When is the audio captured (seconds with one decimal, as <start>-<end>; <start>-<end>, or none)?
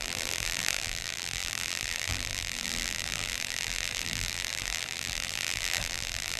none